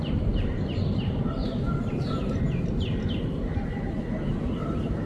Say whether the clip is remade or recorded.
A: remade